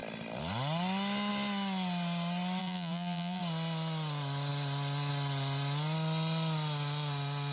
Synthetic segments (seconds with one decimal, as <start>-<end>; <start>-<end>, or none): 2.6-3.4